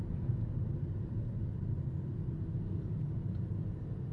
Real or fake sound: real